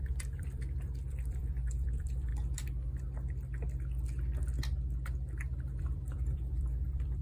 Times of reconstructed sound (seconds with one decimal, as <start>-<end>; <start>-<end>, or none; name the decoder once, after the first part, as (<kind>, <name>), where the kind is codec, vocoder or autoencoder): 0.0-2.3 (vocoder, BigVGAN v2); 5.8-7.2